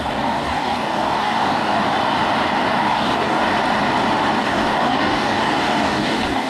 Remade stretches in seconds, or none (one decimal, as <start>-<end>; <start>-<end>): 0.0-1.8; 2.7-3.4; 4.4-6.5